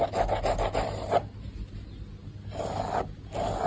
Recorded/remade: recorded